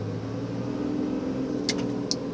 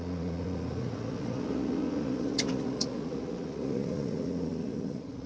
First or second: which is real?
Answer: first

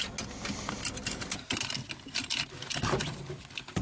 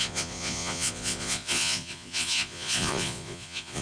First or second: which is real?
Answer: first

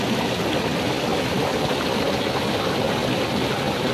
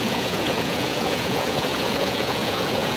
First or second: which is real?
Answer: first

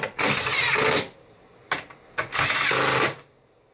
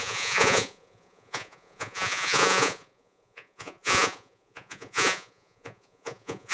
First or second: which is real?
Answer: first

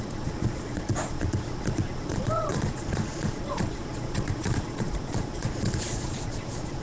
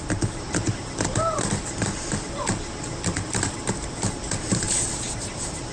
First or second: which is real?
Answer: second